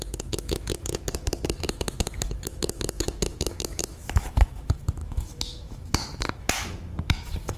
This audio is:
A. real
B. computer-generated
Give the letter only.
B